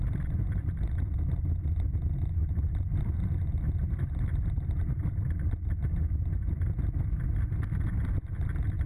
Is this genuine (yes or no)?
yes